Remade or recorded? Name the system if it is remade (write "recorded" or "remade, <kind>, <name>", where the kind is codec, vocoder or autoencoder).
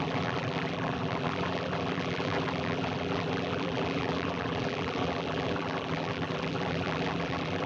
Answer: remade, vocoder, BigVGAN v2